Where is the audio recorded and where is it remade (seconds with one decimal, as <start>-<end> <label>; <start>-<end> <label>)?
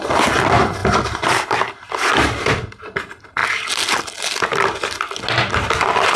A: 0.0-6.2 recorded